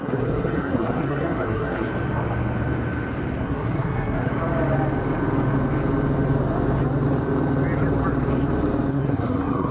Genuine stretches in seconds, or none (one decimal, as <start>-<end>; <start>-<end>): 1.9-3.4; 4.3-8.9